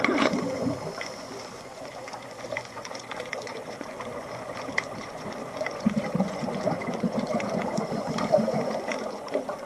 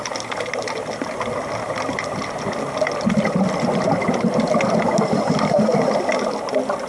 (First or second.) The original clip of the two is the second